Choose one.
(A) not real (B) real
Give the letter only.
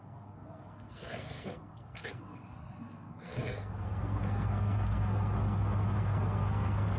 A